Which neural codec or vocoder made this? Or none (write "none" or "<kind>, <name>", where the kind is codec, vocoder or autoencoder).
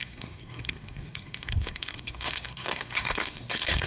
codec, SNAC